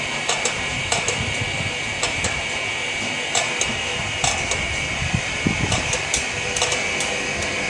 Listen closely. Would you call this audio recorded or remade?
recorded